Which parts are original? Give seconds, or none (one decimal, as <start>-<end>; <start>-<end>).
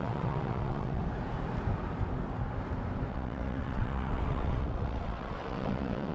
1.0-3.1